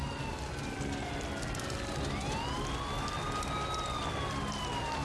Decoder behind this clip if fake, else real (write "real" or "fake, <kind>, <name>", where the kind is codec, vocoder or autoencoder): real